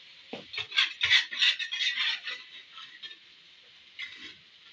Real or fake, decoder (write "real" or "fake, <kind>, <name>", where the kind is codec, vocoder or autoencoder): real